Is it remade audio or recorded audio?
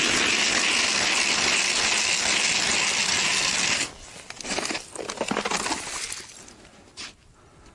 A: recorded